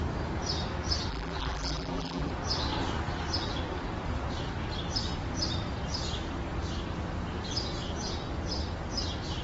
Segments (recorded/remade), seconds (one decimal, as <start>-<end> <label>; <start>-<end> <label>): 0.0-1.1 recorded; 1.1-2.3 remade; 2.3-9.4 recorded